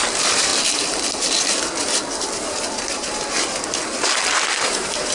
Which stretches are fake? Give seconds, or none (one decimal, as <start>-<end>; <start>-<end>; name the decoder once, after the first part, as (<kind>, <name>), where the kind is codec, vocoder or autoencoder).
none